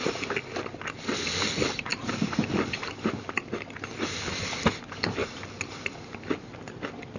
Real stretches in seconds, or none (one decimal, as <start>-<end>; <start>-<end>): 0.0-7.2

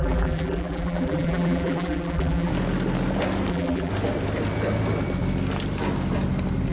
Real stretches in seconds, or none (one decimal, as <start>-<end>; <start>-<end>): 2.5-3.5; 3.9-6.7